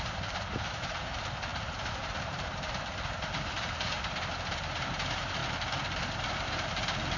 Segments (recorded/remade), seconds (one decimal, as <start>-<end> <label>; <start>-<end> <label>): 0.0-5.4 remade; 5.4-6.2 recorded; 6.2-7.2 remade